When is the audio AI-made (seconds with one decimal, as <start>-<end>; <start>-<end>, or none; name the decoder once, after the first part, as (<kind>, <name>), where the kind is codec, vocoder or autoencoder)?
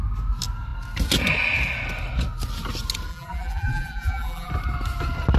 3.1-4.5 (vocoder, BigVGAN v2)